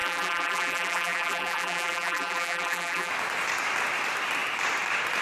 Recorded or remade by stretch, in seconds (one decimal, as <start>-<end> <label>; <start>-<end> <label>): 0.0-3.1 remade; 3.1-5.2 recorded